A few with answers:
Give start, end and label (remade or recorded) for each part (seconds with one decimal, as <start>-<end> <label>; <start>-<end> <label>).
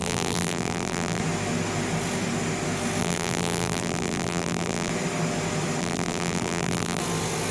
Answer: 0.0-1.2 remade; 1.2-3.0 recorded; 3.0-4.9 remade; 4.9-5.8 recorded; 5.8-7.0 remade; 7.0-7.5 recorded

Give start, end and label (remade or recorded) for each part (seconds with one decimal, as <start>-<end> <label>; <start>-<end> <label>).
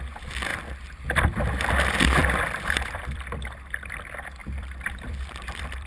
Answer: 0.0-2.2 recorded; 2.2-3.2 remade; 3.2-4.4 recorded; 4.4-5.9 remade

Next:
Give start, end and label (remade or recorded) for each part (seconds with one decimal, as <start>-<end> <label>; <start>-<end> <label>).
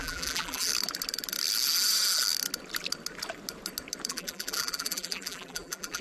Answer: 0.0-0.7 remade; 0.7-4.1 recorded; 4.1-6.0 remade